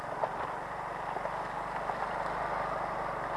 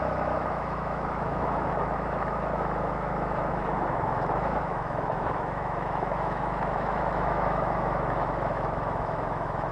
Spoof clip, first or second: second